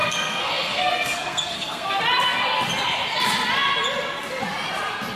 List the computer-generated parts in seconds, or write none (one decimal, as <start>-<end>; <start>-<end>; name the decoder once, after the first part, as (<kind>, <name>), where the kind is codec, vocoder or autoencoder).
0.0-2.0 (codec, SNAC)